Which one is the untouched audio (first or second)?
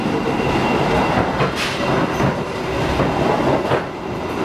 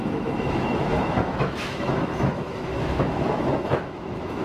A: first